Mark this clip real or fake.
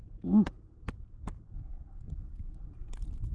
real